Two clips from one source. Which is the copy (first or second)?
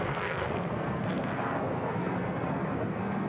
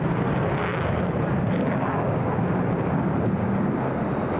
first